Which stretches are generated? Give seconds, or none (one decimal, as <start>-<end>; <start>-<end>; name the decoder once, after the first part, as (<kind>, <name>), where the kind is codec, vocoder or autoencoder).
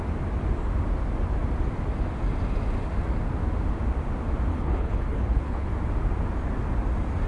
4.5-5.7 (codec, HILCodec)